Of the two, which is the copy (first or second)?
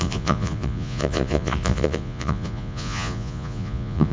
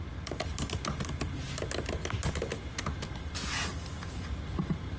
first